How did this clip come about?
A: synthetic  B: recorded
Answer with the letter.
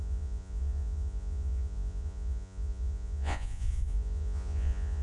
A